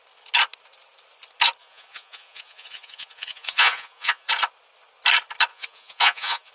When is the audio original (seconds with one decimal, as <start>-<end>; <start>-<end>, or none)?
0.0-1.6; 4.3-5.5